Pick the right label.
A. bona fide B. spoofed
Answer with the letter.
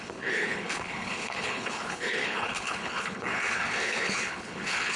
B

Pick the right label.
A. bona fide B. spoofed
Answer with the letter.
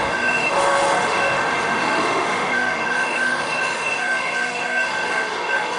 B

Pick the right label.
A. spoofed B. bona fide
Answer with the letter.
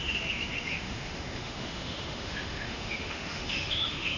A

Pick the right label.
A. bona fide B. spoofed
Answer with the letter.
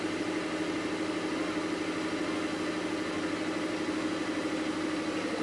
A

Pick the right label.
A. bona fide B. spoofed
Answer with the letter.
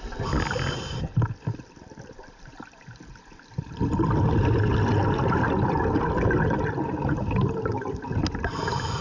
A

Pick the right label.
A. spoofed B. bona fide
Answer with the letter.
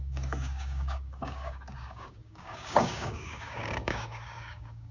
A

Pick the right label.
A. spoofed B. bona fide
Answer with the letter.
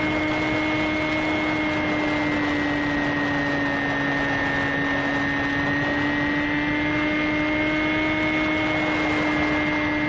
B